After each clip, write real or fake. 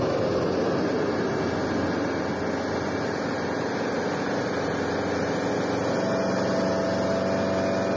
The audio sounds real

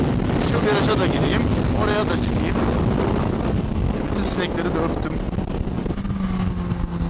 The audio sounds real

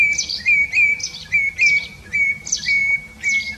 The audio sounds real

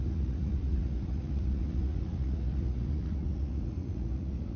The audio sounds fake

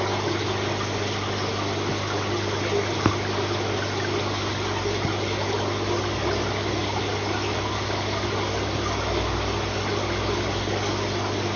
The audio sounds real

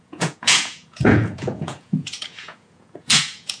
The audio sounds fake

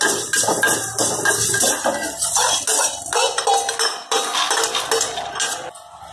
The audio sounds real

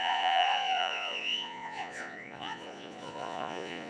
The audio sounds fake